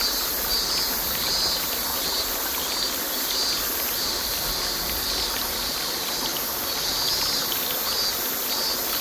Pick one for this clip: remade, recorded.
recorded